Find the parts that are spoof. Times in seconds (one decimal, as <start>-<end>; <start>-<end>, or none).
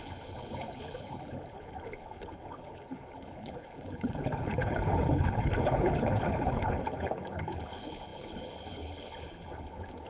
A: 0.0-10.1